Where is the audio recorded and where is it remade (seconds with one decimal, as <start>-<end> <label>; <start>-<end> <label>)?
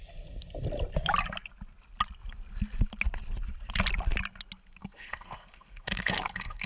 0.0-4.8 recorded; 4.8-6.7 remade